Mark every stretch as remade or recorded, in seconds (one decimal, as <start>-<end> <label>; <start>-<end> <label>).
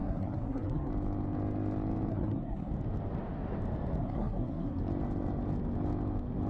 0.0-0.9 remade; 0.9-2.1 recorded; 2.1-2.7 remade; 2.7-4.0 recorded; 4.0-4.8 remade; 4.8-6.5 recorded